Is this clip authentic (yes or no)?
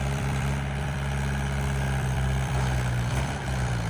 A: no